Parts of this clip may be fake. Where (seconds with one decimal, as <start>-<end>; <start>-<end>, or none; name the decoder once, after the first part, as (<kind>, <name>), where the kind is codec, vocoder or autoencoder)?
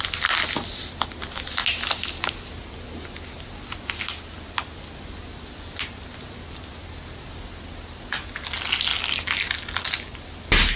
none